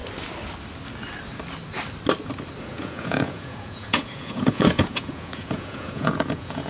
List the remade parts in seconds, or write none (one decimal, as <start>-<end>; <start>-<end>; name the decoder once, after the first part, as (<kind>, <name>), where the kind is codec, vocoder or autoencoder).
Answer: 2.6-6.7 (vocoder, Vocos)